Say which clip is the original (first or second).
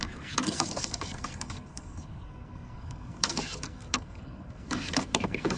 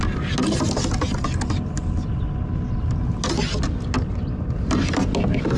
second